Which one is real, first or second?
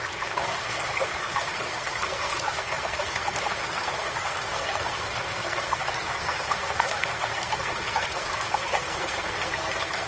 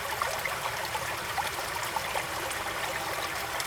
second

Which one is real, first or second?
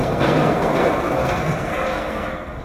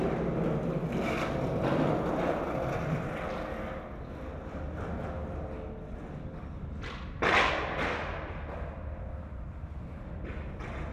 second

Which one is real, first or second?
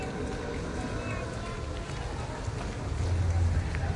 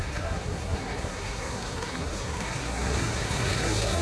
first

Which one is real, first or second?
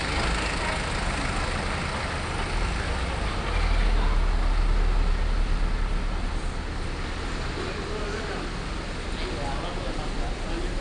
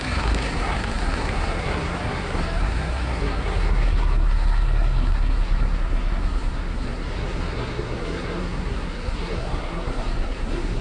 first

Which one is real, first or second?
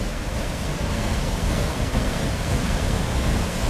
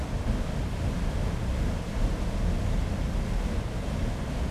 second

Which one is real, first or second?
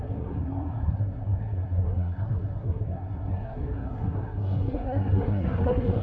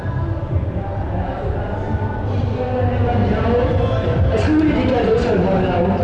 second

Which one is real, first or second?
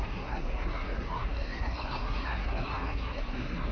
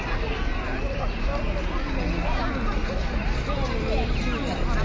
second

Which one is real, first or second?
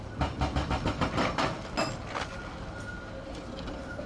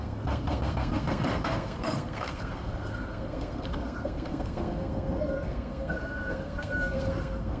first